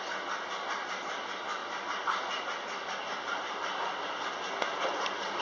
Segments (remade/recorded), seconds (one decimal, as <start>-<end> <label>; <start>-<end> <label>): 0.0-5.4 recorded